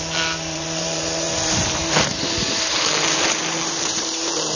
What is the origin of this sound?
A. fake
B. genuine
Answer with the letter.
A